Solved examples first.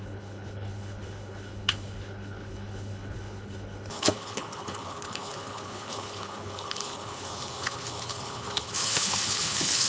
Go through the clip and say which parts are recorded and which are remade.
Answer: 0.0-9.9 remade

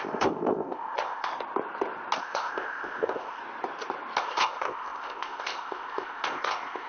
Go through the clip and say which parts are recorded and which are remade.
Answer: 0.0-1.3 remade; 1.3-2.2 recorded; 2.2-3.4 remade; 3.4-4.2 recorded; 4.2-6.9 remade

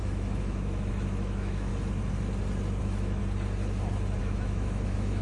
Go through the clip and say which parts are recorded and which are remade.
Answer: 0.0-1.7 remade; 1.7-2.8 recorded; 2.8-3.2 remade; 3.2-4.2 recorded; 4.2-5.2 remade

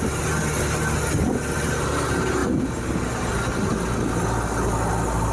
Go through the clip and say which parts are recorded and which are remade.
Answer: 0.0-5.3 recorded

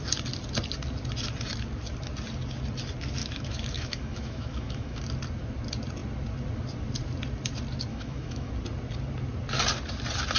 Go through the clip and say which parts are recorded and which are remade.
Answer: 0.0-3.2 recorded; 3.2-5.0 remade; 5.0-7.9 recorded; 7.9-8.5 remade; 8.5-10.4 recorded